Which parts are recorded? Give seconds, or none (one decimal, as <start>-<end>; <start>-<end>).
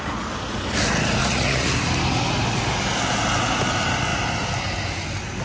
0.0-1.2; 1.7-5.4